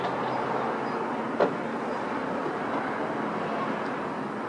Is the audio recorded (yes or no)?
yes